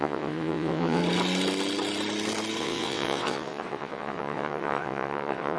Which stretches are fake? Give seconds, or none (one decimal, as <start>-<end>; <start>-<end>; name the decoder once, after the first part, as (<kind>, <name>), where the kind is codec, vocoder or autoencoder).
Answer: 0.0-1.0 (vocoder, WaveNeXt); 2.6-5.6